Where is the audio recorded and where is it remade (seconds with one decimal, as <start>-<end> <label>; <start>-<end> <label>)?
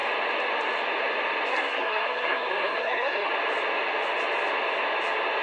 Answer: 0.0-1.5 recorded; 1.5-3.3 remade; 3.3-5.4 recorded